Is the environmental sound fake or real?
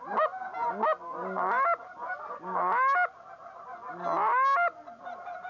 real